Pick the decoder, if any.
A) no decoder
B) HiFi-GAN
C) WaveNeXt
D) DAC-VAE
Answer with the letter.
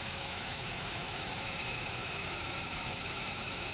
D